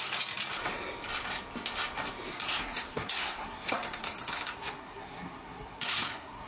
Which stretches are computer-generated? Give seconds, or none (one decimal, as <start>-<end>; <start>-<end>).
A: 2.3-6.5

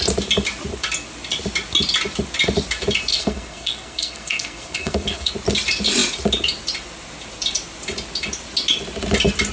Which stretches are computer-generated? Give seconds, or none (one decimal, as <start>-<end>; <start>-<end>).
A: 3.1-5.3

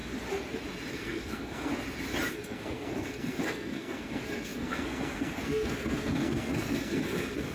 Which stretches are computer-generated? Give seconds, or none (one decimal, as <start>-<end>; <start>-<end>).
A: 0.9-1.7; 2.3-7.5

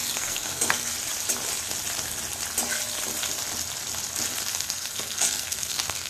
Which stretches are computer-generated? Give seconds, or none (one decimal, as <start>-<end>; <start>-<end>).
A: 0.0-0.9; 4.5-6.1